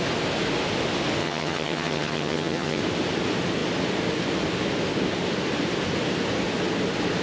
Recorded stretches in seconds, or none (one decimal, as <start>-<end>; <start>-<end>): 0.0-1.2; 2.8-7.2